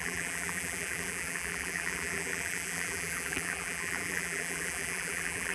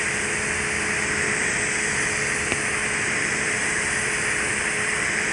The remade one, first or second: first